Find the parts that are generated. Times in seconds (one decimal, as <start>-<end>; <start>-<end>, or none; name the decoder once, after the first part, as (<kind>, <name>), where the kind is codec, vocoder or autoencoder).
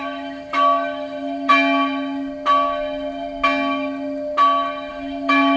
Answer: 0.0-1.5 (autoencoder, DAC-VAE); 4.9-5.6